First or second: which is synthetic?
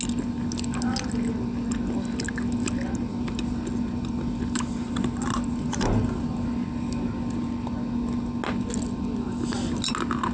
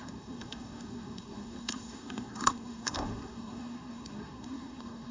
second